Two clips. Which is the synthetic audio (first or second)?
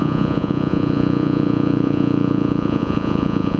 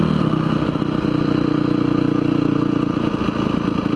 first